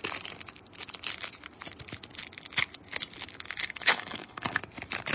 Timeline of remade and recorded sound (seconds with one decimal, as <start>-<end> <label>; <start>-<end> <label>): 0.0-3.6 recorded; 3.6-4.6 remade; 4.6-5.1 recorded